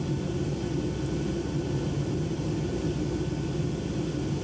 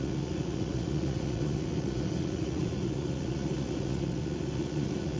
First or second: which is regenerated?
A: second